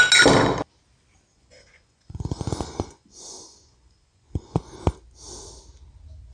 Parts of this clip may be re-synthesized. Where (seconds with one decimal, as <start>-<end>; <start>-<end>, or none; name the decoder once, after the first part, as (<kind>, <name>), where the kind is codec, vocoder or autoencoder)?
1.3-4.7 (vocoder, Vocos)